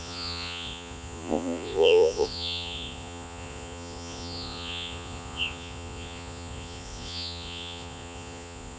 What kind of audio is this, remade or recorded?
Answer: remade